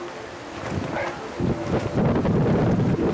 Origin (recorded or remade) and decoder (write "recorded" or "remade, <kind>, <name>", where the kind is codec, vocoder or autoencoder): recorded